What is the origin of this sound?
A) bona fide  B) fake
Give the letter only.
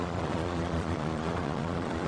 B